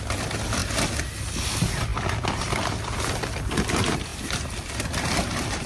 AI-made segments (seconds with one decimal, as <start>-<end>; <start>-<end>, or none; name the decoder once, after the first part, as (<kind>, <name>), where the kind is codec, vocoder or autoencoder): 0.0-0.6 (vocoder, BigVGAN v2); 1.2-5.7